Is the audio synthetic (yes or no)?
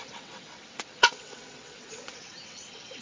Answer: yes